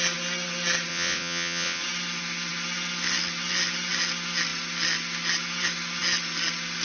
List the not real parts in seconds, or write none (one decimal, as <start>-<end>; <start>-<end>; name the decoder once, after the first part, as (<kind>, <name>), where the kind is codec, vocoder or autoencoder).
0.9-1.8 (vocoder, WaveNeXt)

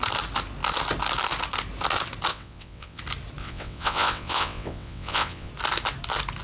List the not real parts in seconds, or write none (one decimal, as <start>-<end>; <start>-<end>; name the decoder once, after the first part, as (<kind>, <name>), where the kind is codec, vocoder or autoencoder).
2.3-3.0 (vocoder, WaveNeXt); 3.4-5.5